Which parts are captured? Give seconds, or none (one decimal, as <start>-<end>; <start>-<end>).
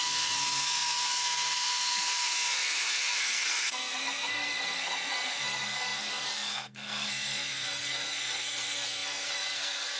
none